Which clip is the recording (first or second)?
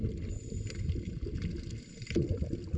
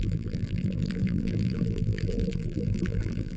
first